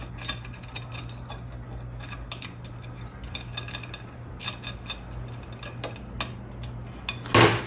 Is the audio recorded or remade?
recorded